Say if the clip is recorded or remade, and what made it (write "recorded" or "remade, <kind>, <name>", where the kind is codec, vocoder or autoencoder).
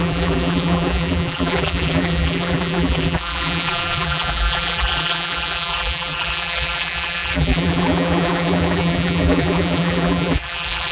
remade, vocoder, BigVGAN v2